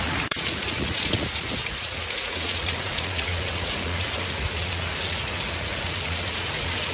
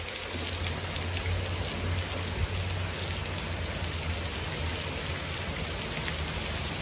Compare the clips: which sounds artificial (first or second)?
first